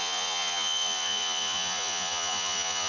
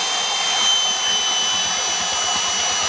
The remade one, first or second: first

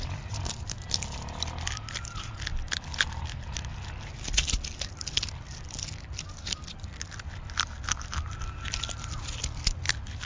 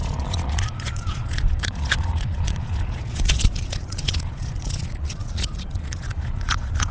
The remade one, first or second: second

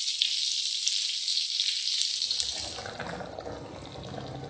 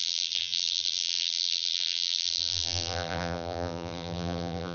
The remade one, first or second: second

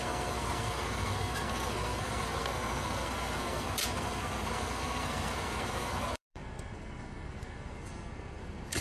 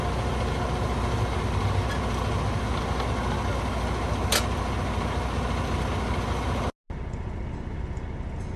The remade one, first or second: first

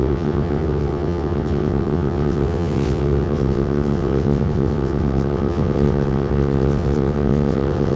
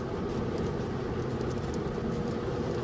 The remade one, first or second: first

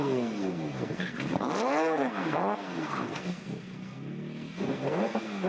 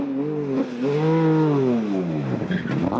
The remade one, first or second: first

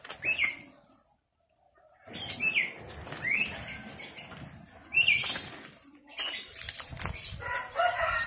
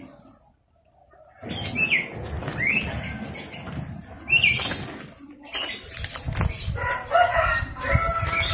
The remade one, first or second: first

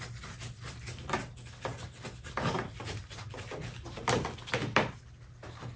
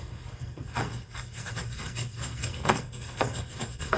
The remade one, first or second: second